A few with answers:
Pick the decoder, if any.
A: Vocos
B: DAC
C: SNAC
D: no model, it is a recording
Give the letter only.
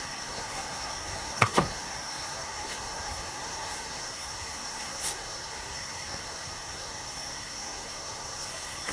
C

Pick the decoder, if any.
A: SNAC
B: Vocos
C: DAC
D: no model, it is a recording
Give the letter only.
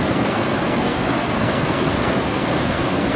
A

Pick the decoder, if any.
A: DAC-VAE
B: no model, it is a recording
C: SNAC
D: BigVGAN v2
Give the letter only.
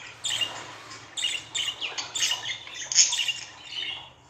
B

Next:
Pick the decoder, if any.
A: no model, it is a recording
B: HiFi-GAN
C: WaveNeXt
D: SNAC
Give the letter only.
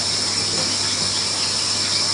A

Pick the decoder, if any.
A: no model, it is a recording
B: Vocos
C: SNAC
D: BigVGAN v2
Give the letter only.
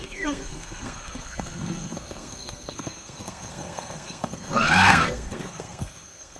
C